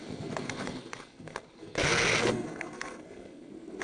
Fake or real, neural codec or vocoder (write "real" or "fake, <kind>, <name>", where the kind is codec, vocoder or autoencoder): fake, codec, SNAC